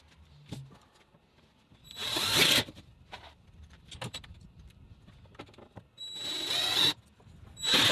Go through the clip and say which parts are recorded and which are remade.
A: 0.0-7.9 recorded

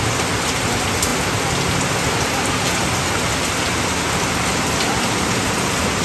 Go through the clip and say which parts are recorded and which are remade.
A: 0.0-6.0 recorded

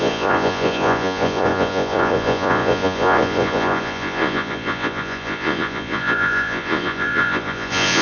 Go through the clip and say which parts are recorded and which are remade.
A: 0.0-8.0 remade

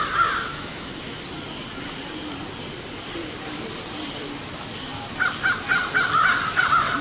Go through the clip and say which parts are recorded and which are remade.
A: 0.0-0.5 recorded; 0.5-1.2 remade; 1.2-7.0 recorded